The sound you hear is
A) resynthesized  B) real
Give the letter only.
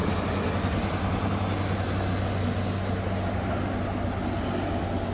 B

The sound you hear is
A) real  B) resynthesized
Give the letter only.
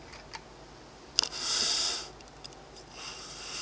A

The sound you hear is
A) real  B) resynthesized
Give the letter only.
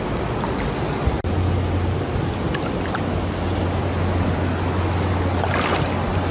A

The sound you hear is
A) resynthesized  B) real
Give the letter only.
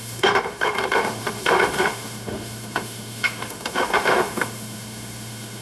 A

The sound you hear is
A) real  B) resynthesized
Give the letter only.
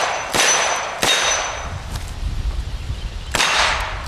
B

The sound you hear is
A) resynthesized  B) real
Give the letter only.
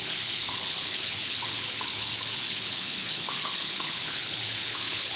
A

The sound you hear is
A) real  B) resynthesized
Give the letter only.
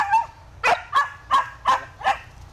A